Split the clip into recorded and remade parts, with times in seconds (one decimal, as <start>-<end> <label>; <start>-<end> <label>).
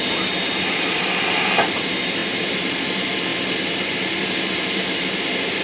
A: 0.0-5.6 recorded